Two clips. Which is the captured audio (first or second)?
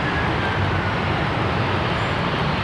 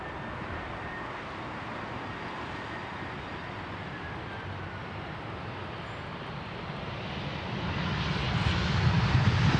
second